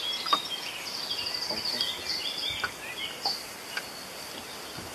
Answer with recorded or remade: recorded